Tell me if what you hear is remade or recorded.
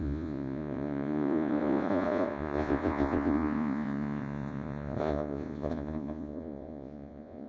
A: remade